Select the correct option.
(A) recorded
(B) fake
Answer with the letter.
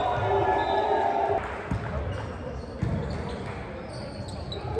A